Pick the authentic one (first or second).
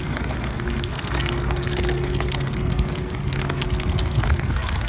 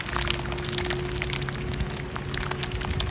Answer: second